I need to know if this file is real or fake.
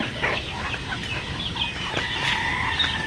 real